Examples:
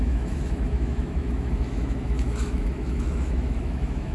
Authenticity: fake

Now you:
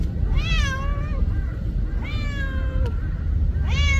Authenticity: real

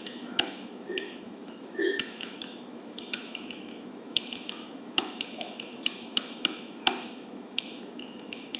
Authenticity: fake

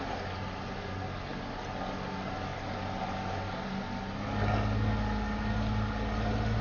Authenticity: real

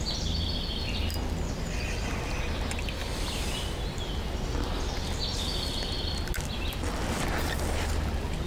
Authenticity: real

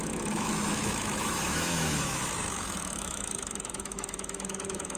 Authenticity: fake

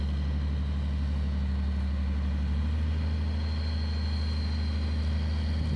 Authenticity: real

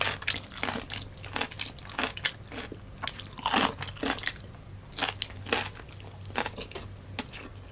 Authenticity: real